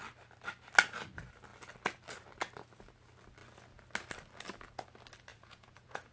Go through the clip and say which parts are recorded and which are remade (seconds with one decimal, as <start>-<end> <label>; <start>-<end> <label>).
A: 0.0-5.3 recorded; 5.3-6.1 remade